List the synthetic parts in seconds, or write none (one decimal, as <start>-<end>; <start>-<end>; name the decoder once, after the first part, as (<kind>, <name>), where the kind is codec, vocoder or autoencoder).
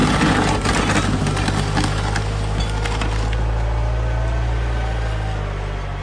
none